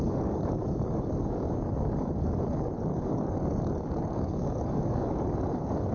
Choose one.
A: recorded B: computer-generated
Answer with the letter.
B